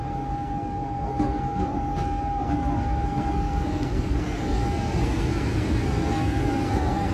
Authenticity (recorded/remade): remade